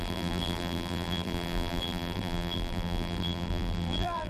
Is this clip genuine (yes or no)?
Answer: no